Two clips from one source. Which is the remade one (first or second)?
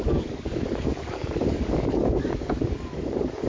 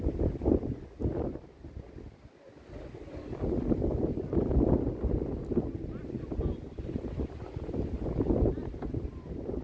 first